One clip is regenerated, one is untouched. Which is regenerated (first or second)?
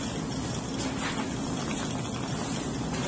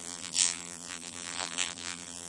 second